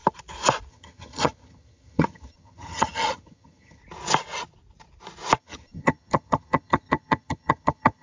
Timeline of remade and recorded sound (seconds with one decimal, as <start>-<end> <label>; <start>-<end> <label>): 0.0-0.7 recorded; 0.7-3.8 remade; 3.8-5.4 recorded; 5.4-8.0 remade